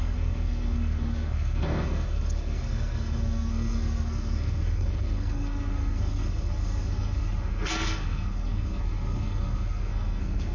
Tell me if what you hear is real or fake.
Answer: fake